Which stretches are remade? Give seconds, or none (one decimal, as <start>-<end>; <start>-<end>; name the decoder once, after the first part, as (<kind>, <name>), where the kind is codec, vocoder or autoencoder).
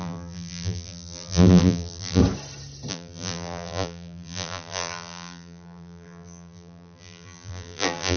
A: 0.0-2.2 (vocoder, BigVGAN v2); 2.9-8.2